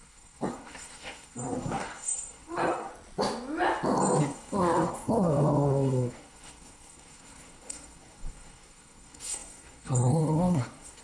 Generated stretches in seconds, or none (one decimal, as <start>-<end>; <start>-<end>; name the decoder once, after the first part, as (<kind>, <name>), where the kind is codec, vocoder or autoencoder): 0.0-2.9 (codec, SNAC); 4.2-11.0